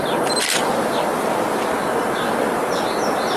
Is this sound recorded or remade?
remade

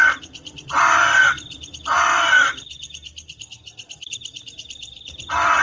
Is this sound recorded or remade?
remade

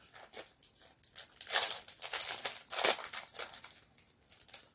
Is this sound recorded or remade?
recorded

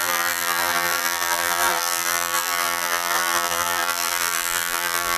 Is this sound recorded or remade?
remade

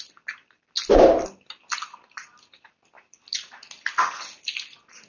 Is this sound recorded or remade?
recorded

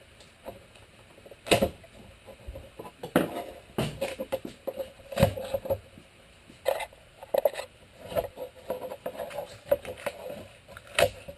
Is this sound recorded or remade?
recorded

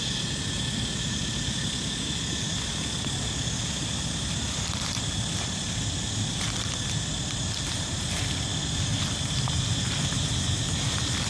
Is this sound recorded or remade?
recorded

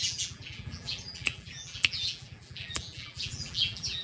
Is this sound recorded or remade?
remade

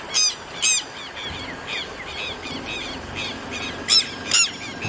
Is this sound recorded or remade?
recorded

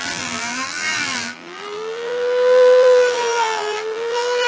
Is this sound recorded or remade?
remade